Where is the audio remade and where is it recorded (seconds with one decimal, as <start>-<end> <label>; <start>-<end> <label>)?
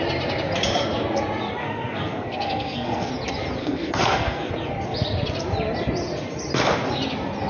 0.0-1.6 recorded; 1.6-3.1 remade; 3.1-3.6 recorded; 3.6-4.5 remade; 4.5-7.5 recorded